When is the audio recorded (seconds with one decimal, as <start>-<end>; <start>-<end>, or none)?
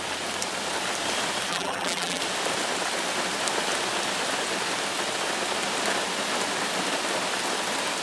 0.0-1.5; 2.2-8.0